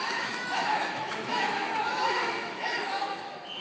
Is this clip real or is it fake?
fake